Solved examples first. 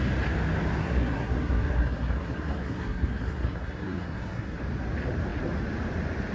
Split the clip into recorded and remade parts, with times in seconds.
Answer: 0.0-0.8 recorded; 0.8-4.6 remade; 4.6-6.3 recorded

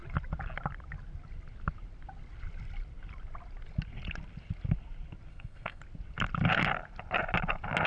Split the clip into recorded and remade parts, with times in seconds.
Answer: 0.0-5.3 recorded; 5.3-5.8 remade; 5.8-7.9 recorded

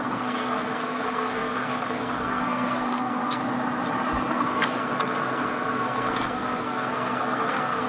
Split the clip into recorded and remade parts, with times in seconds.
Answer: 0.0-3.4 remade; 3.4-4.3 recorded; 4.3-7.9 remade

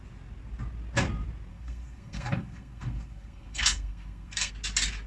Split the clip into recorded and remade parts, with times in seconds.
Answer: 0.0-1.5 recorded; 1.5-4.5 remade; 4.5-5.1 recorded

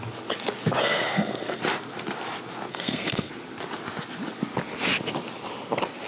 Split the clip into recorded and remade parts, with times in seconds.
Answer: 0.0-0.8 recorded; 0.8-1.6 remade; 1.6-2.7 recorded; 2.7-3.3 remade; 3.3-6.1 recorded

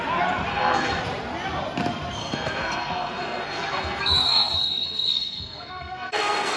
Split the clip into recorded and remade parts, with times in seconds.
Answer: 0.0-0.5 recorded; 0.5-1.0 remade; 1.0-2.2 recorded; 2.2-6.6 remade

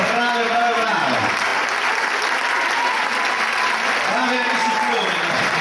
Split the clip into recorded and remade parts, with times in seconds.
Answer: 0.0-5.6 recorded

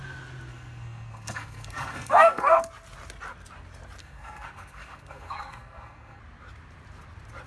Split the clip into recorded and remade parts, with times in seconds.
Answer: 0.0-0.5 recorded; 0.5-2.6 remade; 2.6-4.0 recorded; 4.0-6.2 remade; 6.2-7.5 recorded